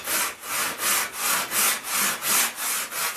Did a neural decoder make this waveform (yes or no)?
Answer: no